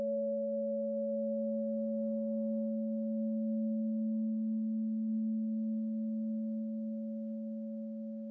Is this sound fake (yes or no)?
yes